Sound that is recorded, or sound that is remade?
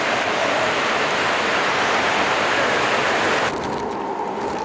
remade